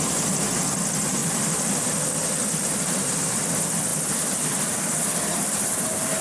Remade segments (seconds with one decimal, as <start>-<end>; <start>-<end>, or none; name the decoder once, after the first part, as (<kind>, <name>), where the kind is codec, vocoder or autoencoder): 1.2-1.8 (vocoder, BigVGAN v2); 2.4-3.5